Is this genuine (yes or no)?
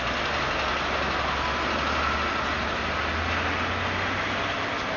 yes